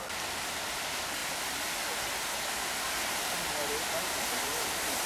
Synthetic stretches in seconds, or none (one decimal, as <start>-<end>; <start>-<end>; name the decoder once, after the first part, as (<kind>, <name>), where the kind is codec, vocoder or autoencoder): none